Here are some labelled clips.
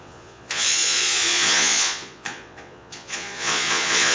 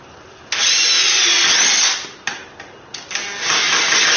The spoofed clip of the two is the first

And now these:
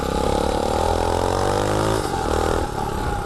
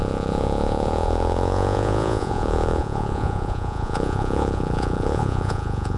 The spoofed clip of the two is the second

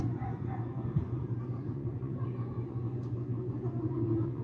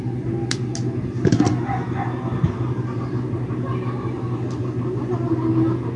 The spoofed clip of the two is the first